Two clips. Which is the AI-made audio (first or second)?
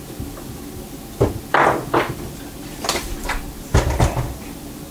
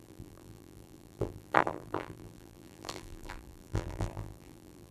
second